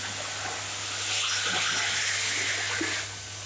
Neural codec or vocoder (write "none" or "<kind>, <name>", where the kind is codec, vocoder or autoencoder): none